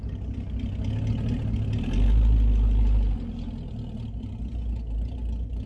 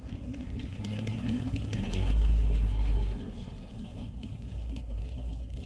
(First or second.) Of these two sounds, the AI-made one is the second